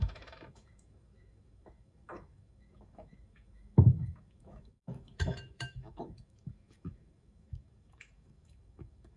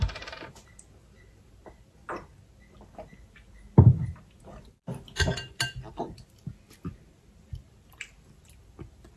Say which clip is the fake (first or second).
first